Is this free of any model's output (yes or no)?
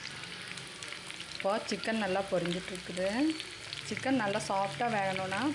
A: yes